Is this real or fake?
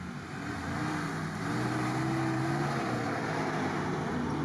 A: real